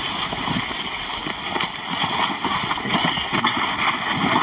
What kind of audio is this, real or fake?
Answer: real